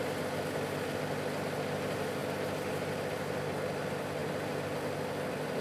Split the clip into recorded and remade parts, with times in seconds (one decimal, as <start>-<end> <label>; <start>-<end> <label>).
0.0-5.6 recorded